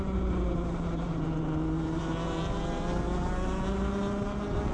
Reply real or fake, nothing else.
real